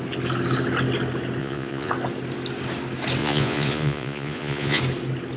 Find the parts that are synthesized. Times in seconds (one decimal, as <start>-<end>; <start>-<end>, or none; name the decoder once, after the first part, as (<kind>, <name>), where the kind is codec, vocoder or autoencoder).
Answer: 1.4-1.9 (vocoder, Vocos); 3.2-4.8